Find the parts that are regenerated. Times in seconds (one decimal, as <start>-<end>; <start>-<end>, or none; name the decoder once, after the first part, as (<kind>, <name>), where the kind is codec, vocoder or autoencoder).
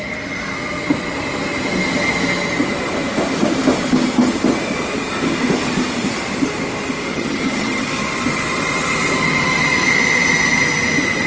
7.1-7.9 (vocoder, HiFi-GAN)